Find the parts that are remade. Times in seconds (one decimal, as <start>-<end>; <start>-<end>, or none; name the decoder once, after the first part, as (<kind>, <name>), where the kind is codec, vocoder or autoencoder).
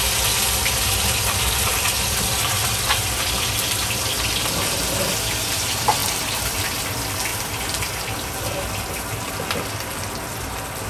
0.0-10.9 (vocoder, BigVGAN v2)